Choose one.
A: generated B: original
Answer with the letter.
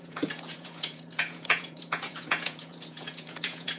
A